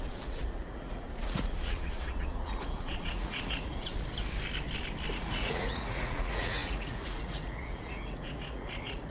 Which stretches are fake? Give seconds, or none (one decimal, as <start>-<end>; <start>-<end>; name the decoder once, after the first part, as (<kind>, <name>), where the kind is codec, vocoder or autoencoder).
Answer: 0.0-3.9 (vocoder, Vocos); 5.1-9.1